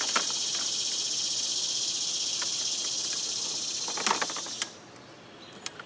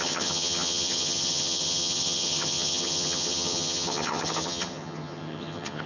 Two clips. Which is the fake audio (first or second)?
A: second